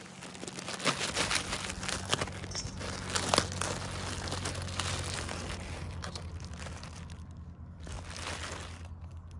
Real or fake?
real